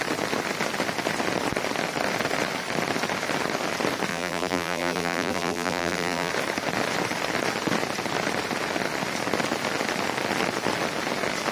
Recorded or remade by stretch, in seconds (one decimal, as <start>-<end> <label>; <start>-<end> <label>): 0.0-4.1 recorded; 4.1-6.3 remade; 6.3-11.5 recorded